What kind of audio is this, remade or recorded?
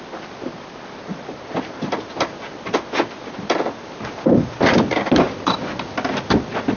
recorded